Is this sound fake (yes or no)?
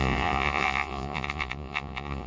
yes